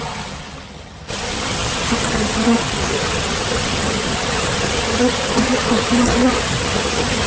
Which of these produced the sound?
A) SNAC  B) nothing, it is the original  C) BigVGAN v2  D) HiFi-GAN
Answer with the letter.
D